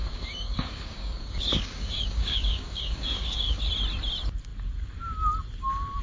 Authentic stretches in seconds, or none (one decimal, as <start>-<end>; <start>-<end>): 3.6-6.0